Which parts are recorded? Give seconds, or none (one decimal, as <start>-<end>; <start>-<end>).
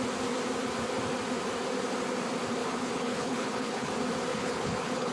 0.0-2.6; 3.9-4.3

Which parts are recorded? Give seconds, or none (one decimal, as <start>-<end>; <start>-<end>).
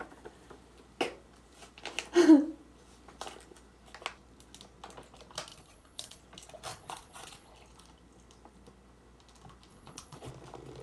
0.0-5.5; 6.2-6.7; 7.5-9.7; 10.3-10.8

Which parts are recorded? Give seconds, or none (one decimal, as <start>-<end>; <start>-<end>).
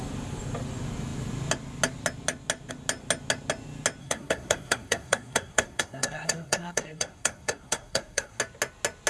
0.0-4.0; 8.4-9.1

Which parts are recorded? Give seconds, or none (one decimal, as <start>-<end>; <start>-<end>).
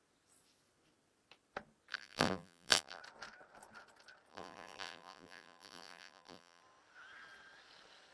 0.0-1.9; 3.0-4.3; 6.6-8.1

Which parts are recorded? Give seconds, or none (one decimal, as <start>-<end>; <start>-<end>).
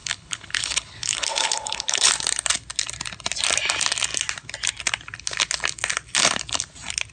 2.1-7.1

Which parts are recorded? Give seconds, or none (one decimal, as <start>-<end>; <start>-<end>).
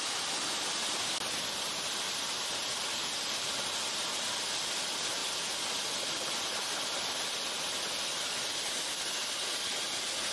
0.0-10.3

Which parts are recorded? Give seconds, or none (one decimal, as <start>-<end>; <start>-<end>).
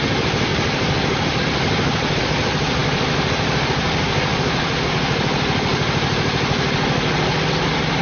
0.0-8.0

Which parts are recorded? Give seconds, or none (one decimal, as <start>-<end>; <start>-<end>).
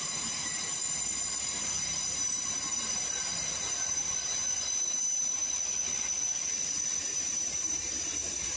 0.8-1.8; 5.4-7.0